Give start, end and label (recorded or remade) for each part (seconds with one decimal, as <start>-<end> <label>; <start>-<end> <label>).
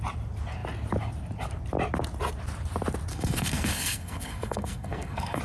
0.0-3.1 recorded; 3.1-5.4 remade